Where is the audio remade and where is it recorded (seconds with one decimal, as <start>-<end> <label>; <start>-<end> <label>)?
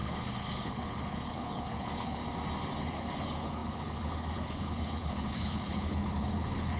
0.0-2.2 remade; 2.2-2.8 recorded; 2.8-6.8 remade